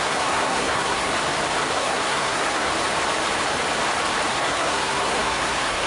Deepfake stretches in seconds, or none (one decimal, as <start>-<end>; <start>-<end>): 0.0-1.1; 1.7-2.7; 4.3-5.9